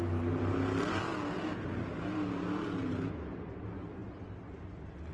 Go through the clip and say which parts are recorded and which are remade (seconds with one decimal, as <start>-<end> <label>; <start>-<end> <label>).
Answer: 0.0-5.1 recorded